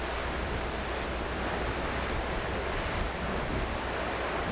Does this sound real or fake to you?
real